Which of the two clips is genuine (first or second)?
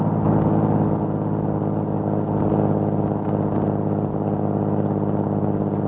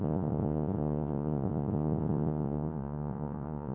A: first